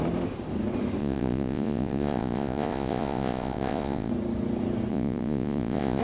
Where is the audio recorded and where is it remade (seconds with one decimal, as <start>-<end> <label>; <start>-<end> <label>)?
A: 0.0-1.0 recorded; 1.0-4.1 remade; 4.1-4.9 recorded; 4.9-6.0 remade